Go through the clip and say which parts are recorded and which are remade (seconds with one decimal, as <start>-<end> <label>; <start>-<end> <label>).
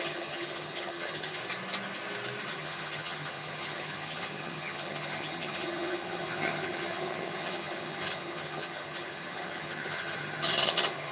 0.0-1.4 remade; 1.4-2.5 recorded; 2.5-11.1 remade